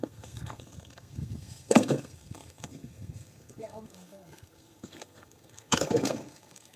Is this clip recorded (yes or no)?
no